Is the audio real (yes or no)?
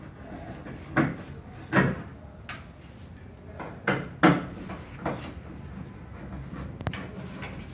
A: yes